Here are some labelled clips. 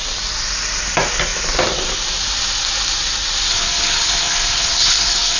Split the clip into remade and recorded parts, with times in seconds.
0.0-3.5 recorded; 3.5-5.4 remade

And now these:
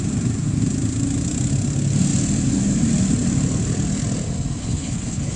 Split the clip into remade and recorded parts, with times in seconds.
0.0-4.6 recorded; 4.6-5.4 remade

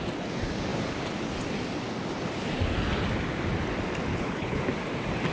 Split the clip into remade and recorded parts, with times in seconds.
0.0-4.1 recorded; 4.1-4.6 remade; 4.6-5.3 recorded

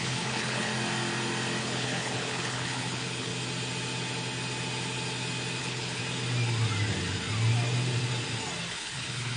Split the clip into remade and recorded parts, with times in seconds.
0.0-0.7 remade; 0.7-1.6 recorded; 1.6-3.3 remade; 3.3-5.6 recorded; 5.6-6.0 remade; 6.0-8.7 recorded; 8.7-9.4 remade